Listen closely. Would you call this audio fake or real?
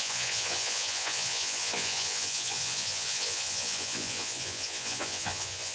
fake